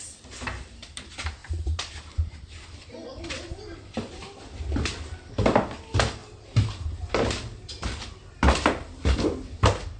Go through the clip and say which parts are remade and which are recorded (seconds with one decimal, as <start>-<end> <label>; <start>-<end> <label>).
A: 0.0-1.4 recorded; 1.4-1.9 remade; 1.9-6.2 recorded; 6.2-7.1 remade; 7.1-10.0 recorded